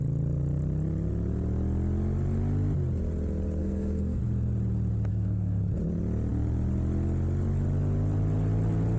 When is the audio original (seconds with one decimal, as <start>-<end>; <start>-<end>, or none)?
0.0-3.6; 4.2-5.1; 5.6-9.0